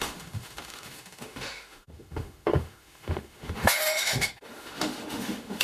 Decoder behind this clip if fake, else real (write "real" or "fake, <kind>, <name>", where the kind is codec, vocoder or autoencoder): fake, autoencoder, DAC-VAE